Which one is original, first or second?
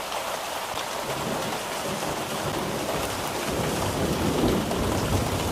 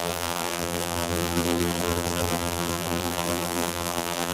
first